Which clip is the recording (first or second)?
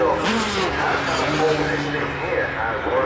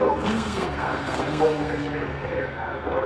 first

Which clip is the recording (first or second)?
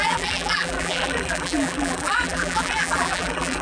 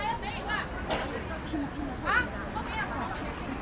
second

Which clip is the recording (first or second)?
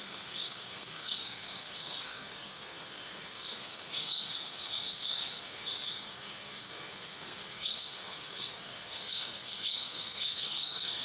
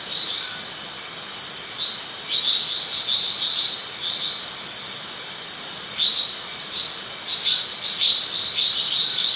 second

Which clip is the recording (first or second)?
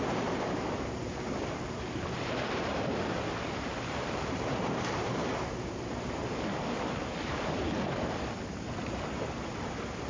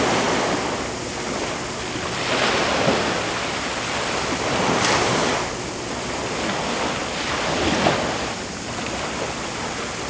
second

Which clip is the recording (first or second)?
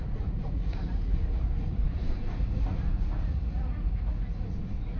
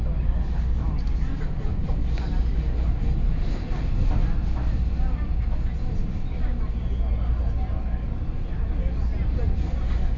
second